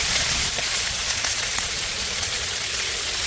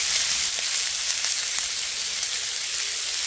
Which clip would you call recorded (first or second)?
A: second